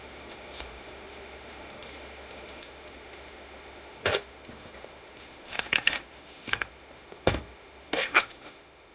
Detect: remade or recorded remade